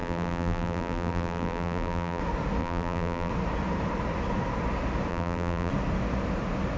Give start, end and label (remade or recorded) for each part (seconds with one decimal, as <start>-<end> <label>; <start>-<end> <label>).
0.0-2.2 remade; 2.2-2.6 recorded; 2.6-3.3 remade; 3.3-5.1 recorded; 5.1-5.7 remade; 5.7-6.8 recorded